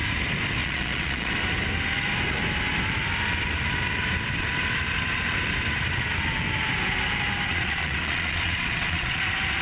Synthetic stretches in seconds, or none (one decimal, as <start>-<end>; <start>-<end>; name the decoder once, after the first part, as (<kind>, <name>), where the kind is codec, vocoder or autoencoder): 0.6-1.3 (vocoder, Vocos); 7.5-9.2